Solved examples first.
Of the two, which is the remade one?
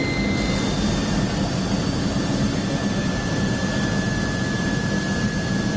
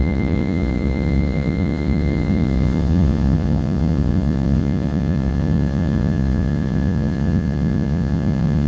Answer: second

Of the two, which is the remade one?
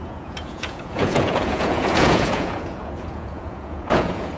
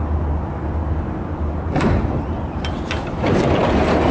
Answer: first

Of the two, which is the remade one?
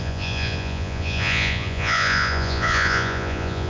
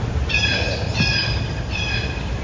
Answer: first